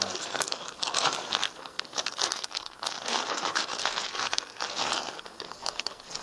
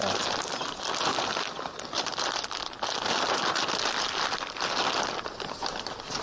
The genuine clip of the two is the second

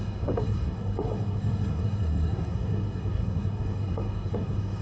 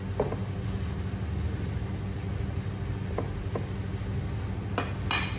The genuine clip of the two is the second